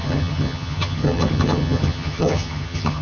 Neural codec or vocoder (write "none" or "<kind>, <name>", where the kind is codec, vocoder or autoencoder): vocoder, HiFi-GAN